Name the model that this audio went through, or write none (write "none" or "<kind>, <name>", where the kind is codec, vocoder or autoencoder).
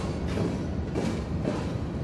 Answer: none